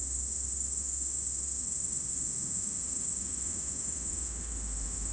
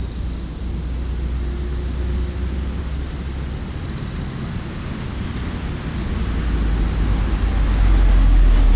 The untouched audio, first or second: second